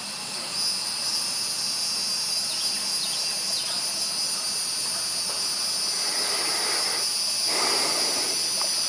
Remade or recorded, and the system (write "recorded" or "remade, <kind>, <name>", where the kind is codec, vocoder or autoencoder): recorded